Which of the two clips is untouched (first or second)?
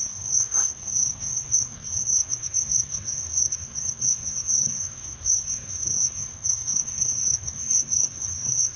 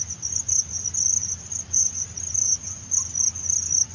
second